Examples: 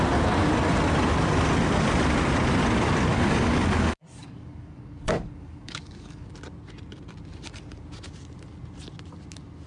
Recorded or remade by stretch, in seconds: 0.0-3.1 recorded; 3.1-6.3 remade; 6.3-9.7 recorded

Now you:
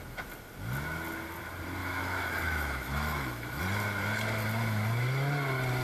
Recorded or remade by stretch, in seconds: 0.0-1.8 recorded; 1.8-3.6 remade; 3.6-5.8 recorded